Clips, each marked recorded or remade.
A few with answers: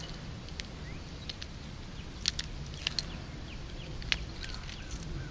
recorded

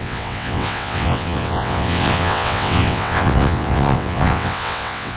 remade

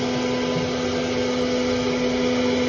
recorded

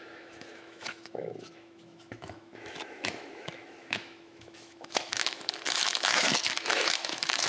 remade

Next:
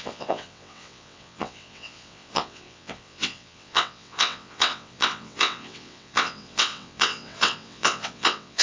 remade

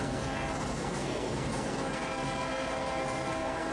remade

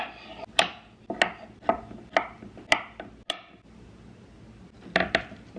recorded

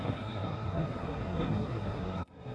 remade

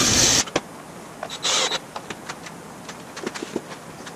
recorded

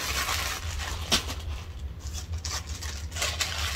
recorded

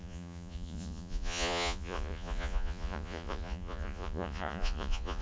remade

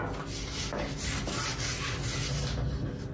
recorded